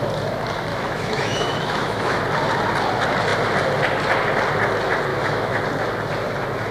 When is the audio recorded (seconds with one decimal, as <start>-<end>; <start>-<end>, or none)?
0.0-0.7; 2.2-5.1; 5.6-6.7